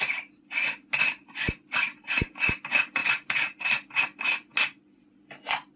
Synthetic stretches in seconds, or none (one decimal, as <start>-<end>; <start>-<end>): none